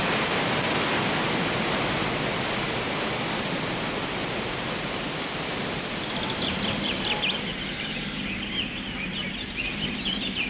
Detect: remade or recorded remade